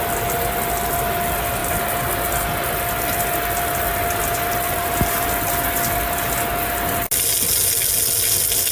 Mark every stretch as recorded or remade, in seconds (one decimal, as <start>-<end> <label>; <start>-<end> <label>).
0.0-8.7 recorded

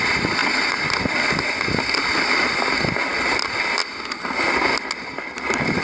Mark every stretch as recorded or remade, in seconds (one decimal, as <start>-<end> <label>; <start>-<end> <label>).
0.0-5.8 recorded